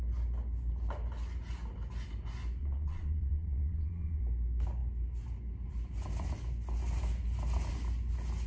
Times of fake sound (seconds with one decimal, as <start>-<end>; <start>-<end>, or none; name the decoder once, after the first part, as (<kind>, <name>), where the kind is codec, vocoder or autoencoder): 2.6-4.2 (vocoder, Vocos)